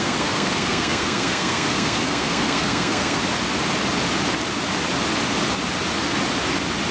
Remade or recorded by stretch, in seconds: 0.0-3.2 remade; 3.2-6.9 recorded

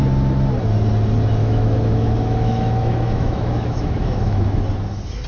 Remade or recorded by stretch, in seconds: 0.0-1.4 recorded; 1.4-4.6 remade; 4.6-5.3 recorded